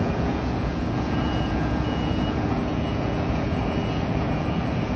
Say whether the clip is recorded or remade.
remade